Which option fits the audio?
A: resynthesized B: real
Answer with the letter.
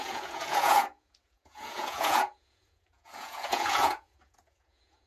A